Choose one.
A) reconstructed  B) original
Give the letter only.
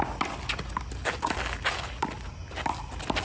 B